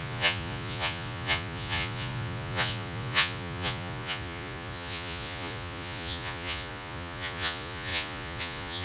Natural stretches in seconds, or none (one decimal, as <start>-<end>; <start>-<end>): none